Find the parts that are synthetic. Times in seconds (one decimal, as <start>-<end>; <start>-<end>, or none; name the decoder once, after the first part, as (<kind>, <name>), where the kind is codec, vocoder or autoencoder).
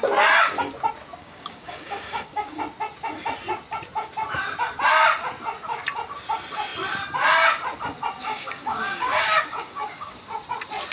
1.2-2.6 (codec, DAC); 8.2-10.2